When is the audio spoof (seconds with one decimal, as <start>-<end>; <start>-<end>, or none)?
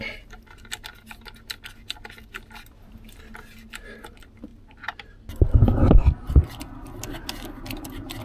none